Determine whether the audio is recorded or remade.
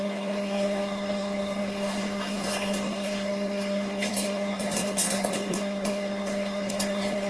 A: remade